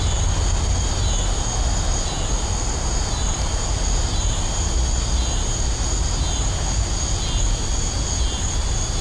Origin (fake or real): real